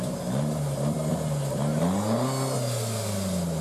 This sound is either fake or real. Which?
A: real